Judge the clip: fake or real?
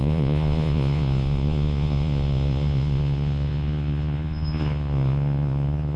fake